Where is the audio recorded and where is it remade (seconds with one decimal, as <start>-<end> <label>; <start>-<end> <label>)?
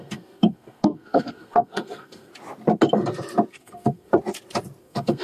0.0-2.3 remade; 2.3-3.5 recorded; 3.5-4.1 remade; 4.1-4.8 recorded; 4.8-5.2 remade